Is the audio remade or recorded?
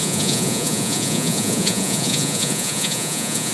remade